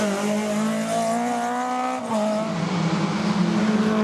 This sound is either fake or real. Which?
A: real